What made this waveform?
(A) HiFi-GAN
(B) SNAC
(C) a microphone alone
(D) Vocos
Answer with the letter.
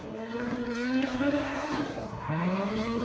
B